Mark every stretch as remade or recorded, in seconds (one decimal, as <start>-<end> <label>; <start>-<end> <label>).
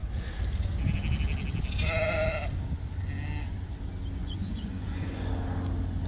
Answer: 0.0-4.2 recorded; 4.2-5.3 remade; 5.3-6.1 recorded